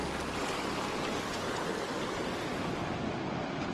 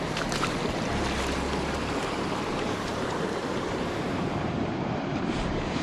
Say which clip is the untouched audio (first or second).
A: first